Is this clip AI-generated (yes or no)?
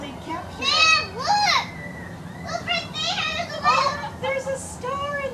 yes